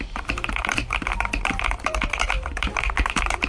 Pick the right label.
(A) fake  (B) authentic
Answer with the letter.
A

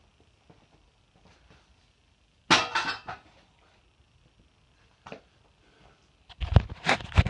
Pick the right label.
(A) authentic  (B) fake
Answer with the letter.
A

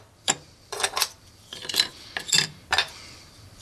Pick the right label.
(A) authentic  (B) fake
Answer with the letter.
B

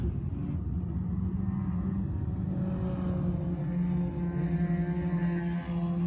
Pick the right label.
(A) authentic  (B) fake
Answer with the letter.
A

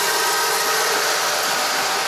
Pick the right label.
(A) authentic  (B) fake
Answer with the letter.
A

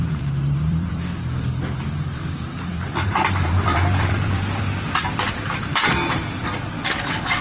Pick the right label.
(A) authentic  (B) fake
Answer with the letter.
B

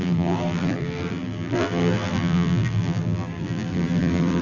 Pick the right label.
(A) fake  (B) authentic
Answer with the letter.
A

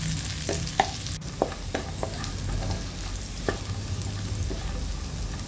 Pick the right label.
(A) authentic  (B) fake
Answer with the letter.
A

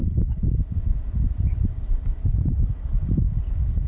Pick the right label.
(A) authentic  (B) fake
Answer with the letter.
B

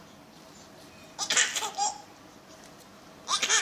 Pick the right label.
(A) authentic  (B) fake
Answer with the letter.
B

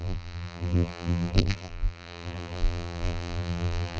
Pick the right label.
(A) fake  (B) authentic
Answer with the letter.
A